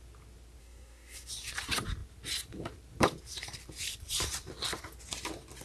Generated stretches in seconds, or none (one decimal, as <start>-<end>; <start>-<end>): 0.6-1.3